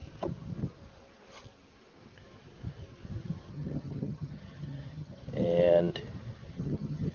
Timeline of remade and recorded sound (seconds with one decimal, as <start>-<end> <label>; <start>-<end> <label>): 0.0-3.5 recorded; 3.5-5.2 remade; 5.2-6.5 recorded; 6.5-7.1 remade